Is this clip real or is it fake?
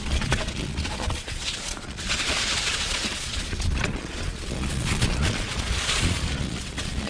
fake